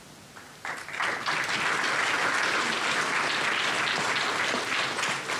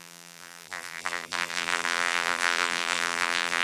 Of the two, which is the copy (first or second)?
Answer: second